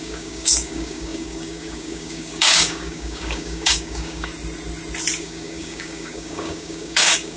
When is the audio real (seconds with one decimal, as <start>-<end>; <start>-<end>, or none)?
4.3-5.2